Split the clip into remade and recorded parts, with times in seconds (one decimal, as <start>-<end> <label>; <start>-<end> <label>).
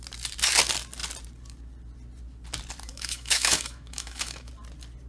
0.0-2.9 recorded; 2.9-4.5 remade; 4.5-5.1 recorded